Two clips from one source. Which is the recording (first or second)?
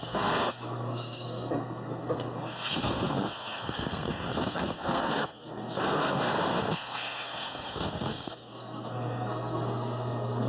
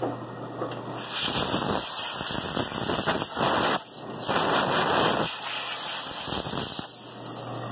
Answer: second